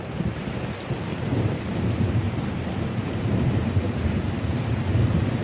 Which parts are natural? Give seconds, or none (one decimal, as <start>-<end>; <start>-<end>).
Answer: 0.0-1.1; 4.3-5.4